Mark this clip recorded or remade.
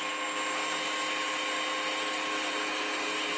recorded